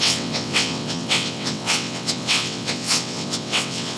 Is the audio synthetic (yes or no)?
yes